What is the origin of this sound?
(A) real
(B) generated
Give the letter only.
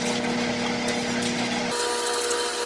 A